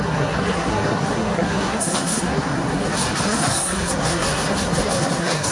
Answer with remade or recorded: remade